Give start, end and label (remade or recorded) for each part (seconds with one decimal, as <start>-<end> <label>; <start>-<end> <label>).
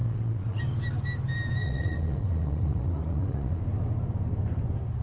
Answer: 0.0-0.6 remade; 0.6-1.6 recorded; 1.6-3.6 remade; 3.6-5.0 recorded